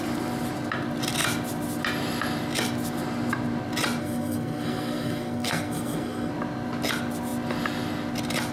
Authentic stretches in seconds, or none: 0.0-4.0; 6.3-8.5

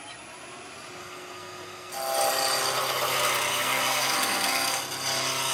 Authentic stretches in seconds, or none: 0.0-1.0; 1.9-3.5; 4.8-5.5

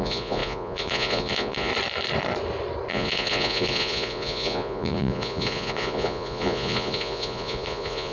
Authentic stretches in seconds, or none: 1.7-2.9

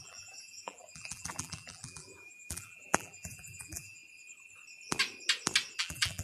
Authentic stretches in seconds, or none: 4.0-5.8

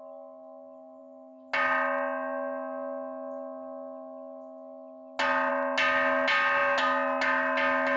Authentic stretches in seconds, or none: 0.0-8.0